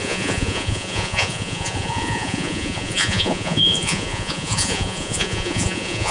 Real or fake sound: fake